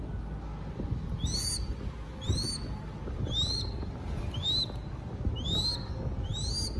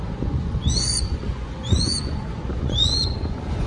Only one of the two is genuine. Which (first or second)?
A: first